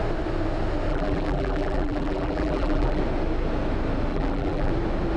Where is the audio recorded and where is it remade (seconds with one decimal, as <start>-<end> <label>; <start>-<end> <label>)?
0.0-0.9 recorded; 0.9-3.0 remade; 3.0-4.1 recorded; 4.1-4.7 remade; 4.7-5.2 recorded